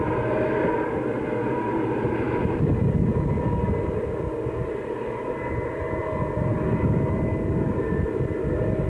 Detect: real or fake real